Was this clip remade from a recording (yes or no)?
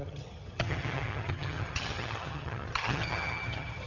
yes